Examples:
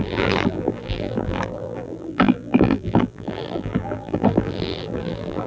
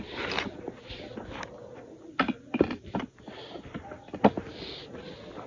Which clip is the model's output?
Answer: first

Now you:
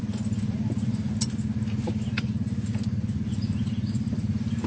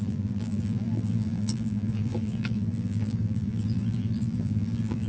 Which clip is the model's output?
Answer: second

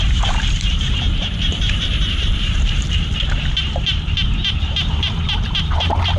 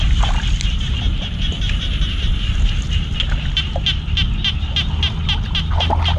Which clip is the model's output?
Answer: first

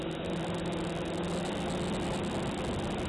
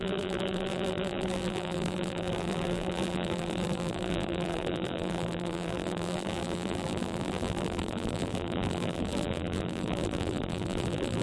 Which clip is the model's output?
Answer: second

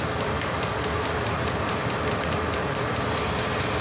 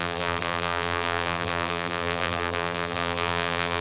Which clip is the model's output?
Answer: second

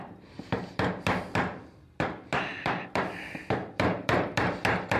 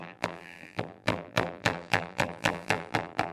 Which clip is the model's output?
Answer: second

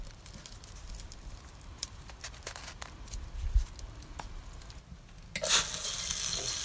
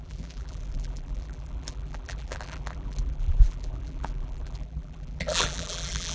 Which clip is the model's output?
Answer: second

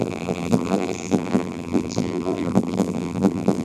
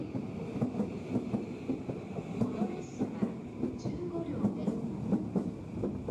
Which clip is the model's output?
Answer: first